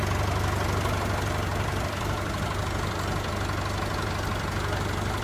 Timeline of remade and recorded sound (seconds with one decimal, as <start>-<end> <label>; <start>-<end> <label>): 0.0-1.5 recorded; 1.5-2.6 remade; 2.6-5.2 recorded